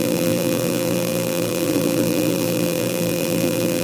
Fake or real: fake